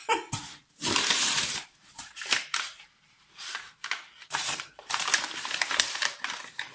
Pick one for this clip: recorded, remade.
remade